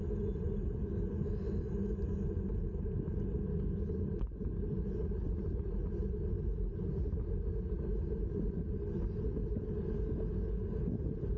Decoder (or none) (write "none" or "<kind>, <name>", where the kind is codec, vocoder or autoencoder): none